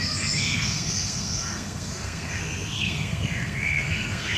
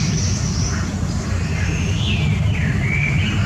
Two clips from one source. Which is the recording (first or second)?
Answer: second